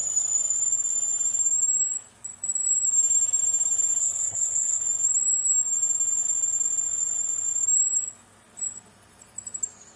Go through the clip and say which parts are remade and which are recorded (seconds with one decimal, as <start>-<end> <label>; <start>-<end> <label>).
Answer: 0.0-4.0 recorded; 4.0-4.8 remade; 4.8-10.0 recorded